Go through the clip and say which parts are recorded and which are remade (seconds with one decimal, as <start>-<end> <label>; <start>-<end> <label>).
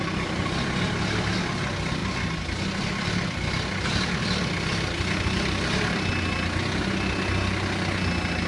0.0-8.5 recorded